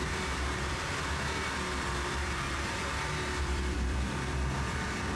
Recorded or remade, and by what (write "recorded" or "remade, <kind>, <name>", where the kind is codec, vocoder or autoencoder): remade, vocoder, BigVGAN v2